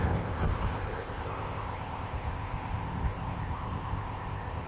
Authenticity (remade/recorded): remade